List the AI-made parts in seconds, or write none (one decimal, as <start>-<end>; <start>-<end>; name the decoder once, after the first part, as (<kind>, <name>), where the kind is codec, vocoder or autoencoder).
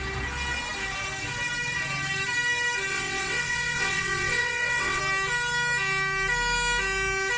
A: 2.9-5.0 (vocoder, WaveNeXt)